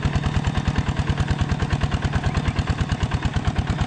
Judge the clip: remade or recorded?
recorded